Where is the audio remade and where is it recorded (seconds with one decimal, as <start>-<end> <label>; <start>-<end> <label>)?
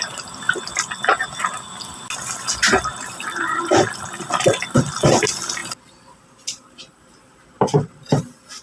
0.0-2.6 recorded; 2.6-3.6 remade; 3.6-5.6 recorded; 5.6-8.2 remade; 8.2-8.6 recorded